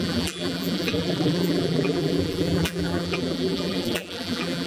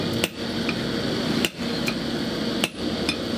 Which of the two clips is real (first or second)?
second